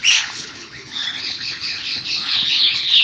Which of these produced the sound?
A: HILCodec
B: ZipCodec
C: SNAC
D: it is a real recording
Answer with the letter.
A